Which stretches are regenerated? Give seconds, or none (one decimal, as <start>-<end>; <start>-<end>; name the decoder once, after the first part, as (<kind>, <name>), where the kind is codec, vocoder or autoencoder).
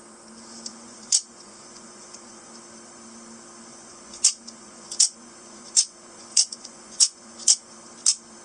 0.7-2.5 (vocoder, Vocos); 3.7-7.7